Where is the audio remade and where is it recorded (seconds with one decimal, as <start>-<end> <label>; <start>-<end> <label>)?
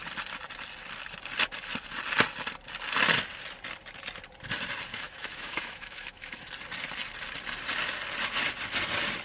0.0-4.9 recorded; 4.9-6.5 remade; 6.5-9.2 recorded